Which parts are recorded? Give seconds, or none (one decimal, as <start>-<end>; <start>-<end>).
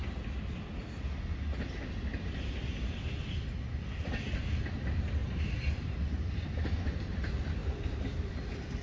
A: 0.0-5.2; 6.4-8.8